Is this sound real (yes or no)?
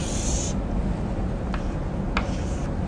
yes